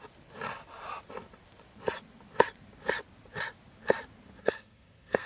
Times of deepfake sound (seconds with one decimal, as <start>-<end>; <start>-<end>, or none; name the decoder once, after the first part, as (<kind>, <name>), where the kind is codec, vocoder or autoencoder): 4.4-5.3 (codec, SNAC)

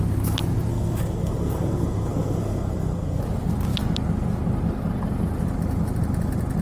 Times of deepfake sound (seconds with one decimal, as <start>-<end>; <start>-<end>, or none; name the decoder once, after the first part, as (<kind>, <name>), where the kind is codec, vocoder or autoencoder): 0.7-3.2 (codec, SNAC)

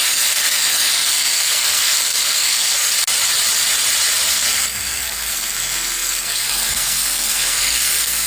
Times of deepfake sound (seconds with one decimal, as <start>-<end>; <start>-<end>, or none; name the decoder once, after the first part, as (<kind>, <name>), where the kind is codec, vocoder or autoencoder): 0.0-2.9 (codec, SNAC); 4.3-8.3